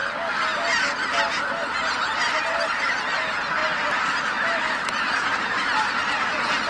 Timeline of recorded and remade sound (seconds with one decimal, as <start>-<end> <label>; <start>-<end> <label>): 0.0-6.7 recorded

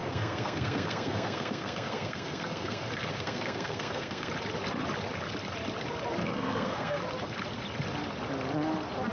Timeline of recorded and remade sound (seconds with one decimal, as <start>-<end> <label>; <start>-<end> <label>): 0.0-4.3 remade; 4.3-6.2 recorded; 6.2-7.0 remade; 7.0-9.1 recorded